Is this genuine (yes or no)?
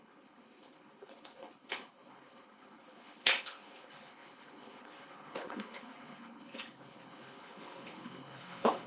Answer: no